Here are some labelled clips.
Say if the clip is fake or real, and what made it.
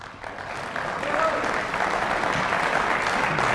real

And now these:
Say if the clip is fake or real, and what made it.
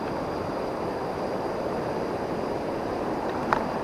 real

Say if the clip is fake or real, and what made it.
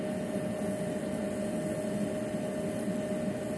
real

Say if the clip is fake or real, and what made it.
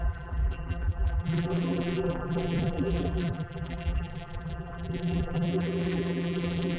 fake, vocoder, BigVGAN v2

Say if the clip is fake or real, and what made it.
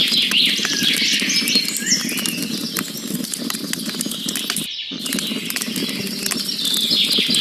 real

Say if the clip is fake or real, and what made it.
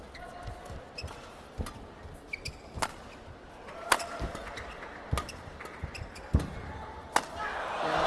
real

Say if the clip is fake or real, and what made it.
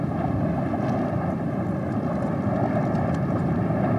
real